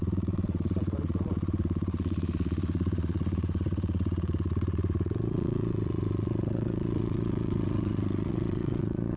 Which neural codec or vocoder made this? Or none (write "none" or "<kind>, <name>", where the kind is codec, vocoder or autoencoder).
vocoder, WaveNeXt